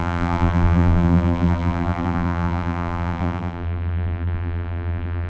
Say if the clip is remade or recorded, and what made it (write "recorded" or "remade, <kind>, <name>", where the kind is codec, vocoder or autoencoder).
remade, vocoder, BigVGAN v2